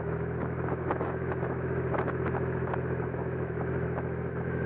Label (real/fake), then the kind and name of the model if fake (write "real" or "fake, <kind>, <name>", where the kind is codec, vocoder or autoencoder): fake, autoencoder, DAC-VAE